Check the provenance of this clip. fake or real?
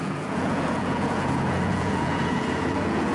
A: fake